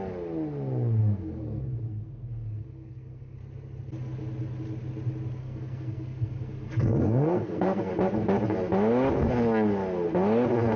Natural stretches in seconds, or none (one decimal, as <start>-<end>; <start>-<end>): 0.0-1.0; 3.4-5.4; 7.9-10.8